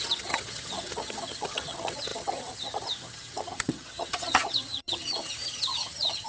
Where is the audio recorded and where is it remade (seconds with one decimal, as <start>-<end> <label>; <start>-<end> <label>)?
0.0-6.3 remade